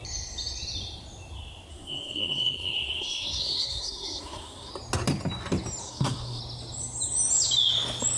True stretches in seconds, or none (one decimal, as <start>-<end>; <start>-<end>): 0.0-1.7; 4.7-5.8; 6.4-8.2